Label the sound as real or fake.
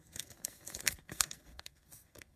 fake